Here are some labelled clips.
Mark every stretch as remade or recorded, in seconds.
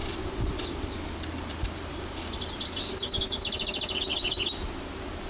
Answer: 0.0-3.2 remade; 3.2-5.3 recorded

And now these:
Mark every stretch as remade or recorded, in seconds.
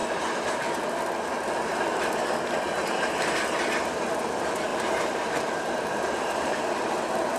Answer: 0.0-4.7 recorded; 4.7-6.6 remade; 6.6-7.4 recorded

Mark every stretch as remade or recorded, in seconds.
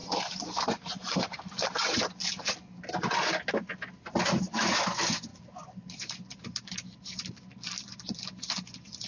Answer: 0.0-5.3 recorded; 5.3-7.1 remade; 7.1-9.1 recorded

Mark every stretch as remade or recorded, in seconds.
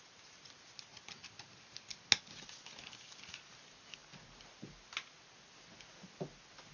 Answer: 0.0-6.7 recorded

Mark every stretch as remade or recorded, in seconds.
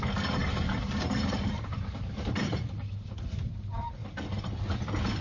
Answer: 0.0-0.4 recorded; 0.4-3.5 remade; 3.5-5.2 recorded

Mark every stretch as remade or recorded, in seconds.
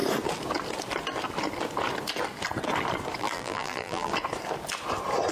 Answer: 0.0-3.2 recorded; 3.2-4.1 remade; 4.1-5.3 recorded